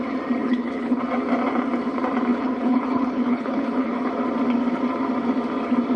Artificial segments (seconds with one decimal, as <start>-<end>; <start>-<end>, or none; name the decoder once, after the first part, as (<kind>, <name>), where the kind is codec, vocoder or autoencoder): 0.4-1.0 (codec, HILCodec); 2.3-4.1